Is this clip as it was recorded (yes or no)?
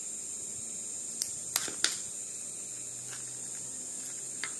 yes